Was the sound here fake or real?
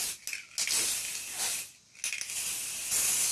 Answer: real